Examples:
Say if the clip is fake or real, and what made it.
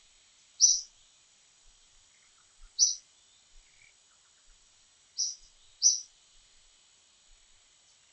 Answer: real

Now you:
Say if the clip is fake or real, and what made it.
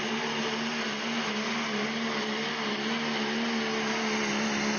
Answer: real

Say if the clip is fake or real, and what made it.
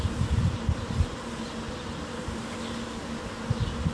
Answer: fake, vocoder, BigVGAN v2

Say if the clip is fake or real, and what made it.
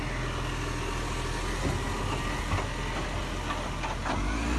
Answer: real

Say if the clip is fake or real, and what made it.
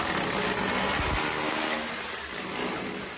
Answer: real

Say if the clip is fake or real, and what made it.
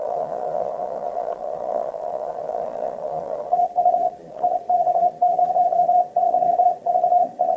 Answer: fake, vocoder, Vocos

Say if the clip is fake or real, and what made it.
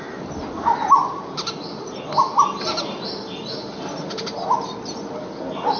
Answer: real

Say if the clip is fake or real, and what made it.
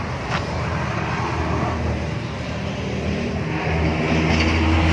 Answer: real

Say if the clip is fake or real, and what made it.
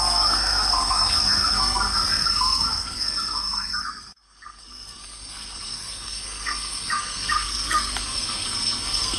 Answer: fake, codec, SNAC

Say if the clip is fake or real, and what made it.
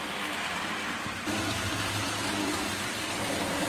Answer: real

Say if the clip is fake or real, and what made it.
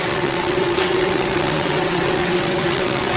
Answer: fake, vocoder, WaveNeXt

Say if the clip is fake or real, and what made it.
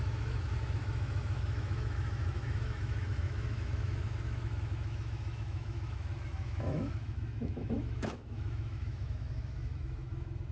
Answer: fake, autoencoder, DAC-VAE